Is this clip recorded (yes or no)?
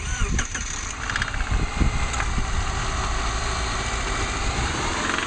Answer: no